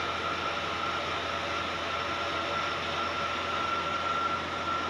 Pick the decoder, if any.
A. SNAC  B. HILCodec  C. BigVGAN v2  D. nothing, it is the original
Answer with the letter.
D